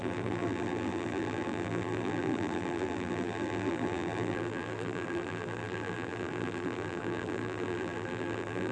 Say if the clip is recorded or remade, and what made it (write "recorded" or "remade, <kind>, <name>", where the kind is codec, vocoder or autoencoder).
remade, vocoder, BigVGAN v2